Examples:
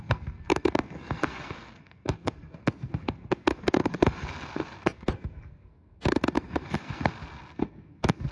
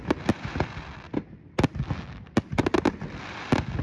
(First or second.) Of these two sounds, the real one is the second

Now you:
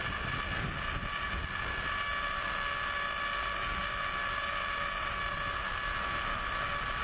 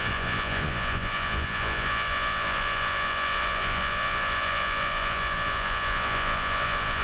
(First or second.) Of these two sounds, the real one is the first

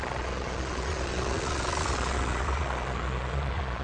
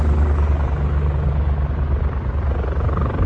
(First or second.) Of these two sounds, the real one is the second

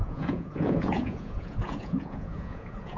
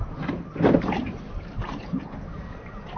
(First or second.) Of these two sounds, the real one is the second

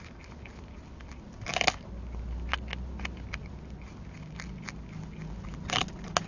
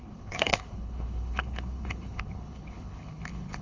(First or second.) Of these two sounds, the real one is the first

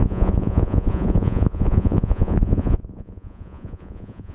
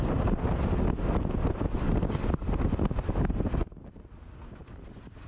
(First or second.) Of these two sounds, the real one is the second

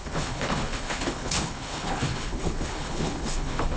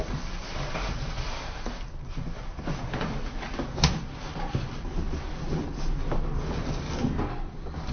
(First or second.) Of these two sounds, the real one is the second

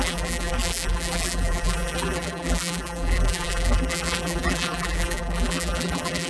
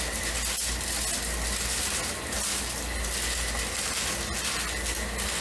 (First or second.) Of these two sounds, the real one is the second